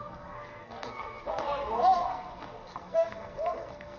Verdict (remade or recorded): remade